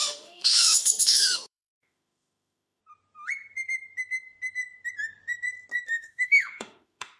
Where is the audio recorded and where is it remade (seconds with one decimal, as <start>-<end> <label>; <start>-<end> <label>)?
0.0-2.8 remade; 2.8-5.9 recorded; 5.9-7.2 remade